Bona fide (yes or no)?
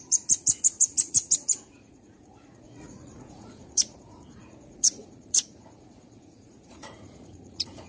no